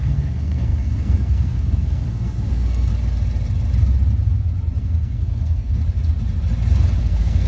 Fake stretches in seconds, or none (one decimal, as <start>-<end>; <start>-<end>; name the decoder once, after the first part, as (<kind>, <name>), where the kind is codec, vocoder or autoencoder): 0.0-2.9 (codec, SNAC); 4.8-5.8; 7.0-7.5